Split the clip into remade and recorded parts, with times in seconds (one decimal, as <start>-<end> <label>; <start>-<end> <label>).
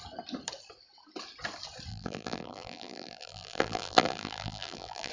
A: 0.0-1.9 recorded; 1.9-5.1 remade